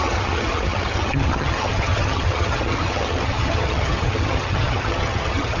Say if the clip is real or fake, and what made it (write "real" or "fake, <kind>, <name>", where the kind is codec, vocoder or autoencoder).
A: fake, vocoder, HiFi-GAN